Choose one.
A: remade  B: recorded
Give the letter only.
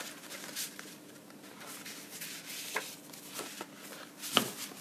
B